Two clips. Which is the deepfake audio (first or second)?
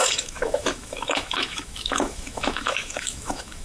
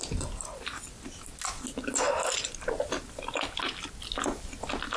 first